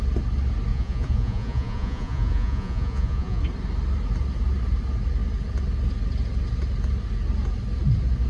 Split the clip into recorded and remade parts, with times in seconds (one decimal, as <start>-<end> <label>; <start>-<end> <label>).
0.0-0.7 recorded; 0.7-3.4 remade; 3.4-8.3 recorded